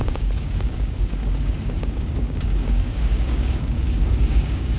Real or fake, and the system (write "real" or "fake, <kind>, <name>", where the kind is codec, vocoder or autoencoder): fake, codec, DAC